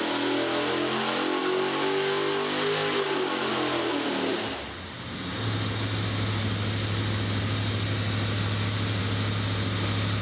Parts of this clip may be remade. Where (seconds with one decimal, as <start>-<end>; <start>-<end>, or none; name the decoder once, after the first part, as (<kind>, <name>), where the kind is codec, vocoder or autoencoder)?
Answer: none